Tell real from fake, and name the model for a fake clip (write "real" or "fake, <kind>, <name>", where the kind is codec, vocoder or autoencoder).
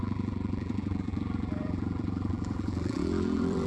fake, vocoder, BigVGAN v2